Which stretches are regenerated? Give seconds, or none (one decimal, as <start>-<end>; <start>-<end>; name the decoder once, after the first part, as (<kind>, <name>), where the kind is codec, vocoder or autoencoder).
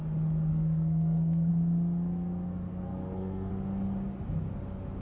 0.5-1.5 (codec, SNAC); 2.7-3.5